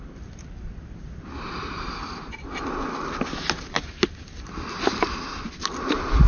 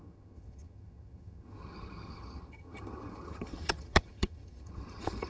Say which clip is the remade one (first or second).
second